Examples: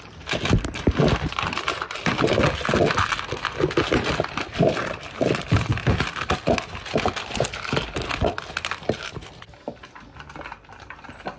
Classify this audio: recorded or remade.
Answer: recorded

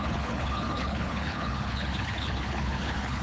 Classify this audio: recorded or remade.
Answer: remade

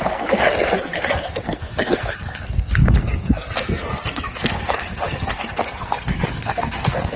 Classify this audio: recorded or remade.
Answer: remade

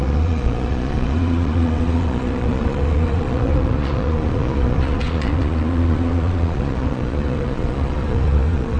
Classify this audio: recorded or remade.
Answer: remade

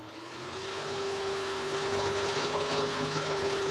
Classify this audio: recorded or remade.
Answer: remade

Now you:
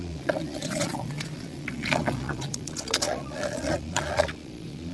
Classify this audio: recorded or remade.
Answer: remade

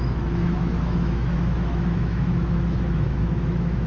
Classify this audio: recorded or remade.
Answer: remade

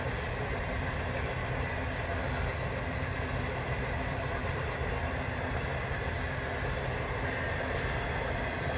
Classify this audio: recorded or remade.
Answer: recorded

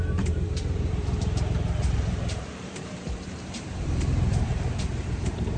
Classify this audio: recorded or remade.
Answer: remade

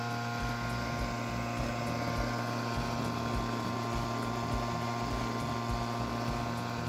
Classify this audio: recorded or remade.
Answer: recorded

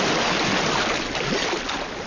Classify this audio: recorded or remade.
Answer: recorded